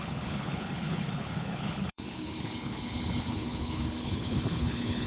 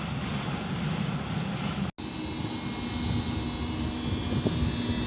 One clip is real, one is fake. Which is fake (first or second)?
first